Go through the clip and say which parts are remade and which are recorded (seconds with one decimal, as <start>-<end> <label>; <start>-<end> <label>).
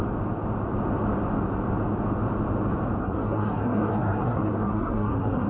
0.0-3.0 recorded; 3.0-5.5 remade